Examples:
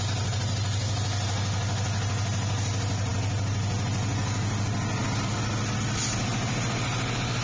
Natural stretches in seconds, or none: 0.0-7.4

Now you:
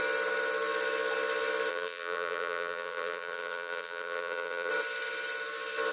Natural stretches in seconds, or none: 0.0-1.7; 4.7-5.9

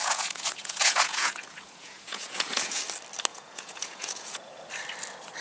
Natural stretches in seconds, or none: 2.8-3.3; 4.5-5.4

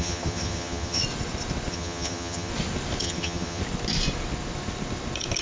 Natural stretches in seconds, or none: 1.0-1.7; 2.5-3.0; 3.6-5.4

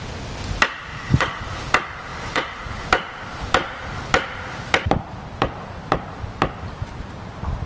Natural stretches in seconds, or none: 0.0-0.9; 1.4-2.1; 2.6-7.7

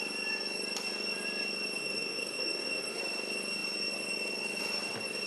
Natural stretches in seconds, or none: 0.0-1.8; 3.0-5.3

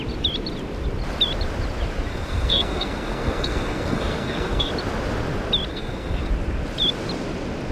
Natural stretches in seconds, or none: 0.0-2.1; 4.7-5.7; 6.3-7.7

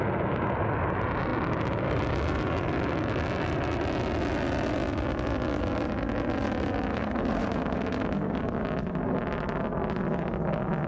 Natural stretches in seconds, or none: 0.0-6.9; 8.4-10.9